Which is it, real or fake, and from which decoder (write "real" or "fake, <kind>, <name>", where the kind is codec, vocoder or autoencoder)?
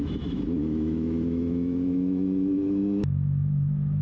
fake, autoencoder, DAC-VAE